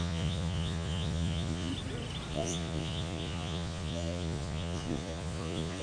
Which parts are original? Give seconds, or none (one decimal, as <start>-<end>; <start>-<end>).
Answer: 1.7-2.3